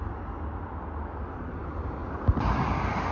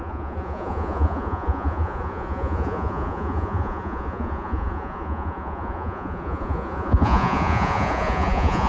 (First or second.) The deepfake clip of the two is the second